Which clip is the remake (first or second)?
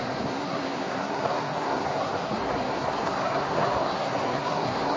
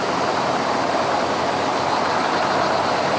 first